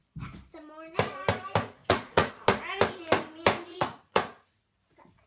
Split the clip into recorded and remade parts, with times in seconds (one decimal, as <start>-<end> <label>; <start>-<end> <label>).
0.0-1.8 recorded; 1.8-2.3 remade; 2.3-3.7 recorded; 3.7-4.6 remade; 4.6-5.3 recorded